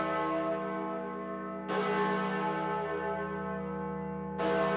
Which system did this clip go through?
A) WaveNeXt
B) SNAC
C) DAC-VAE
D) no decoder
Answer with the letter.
D